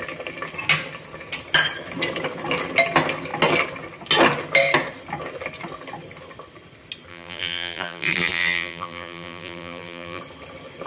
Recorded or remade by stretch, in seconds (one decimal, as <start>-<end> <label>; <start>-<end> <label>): 0.0-7.1 recorded; 7.1-10.2 remade; 10.2-10.9 recorded